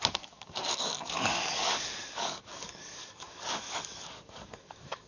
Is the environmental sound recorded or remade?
remade